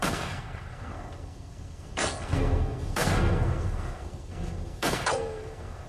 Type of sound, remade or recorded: remade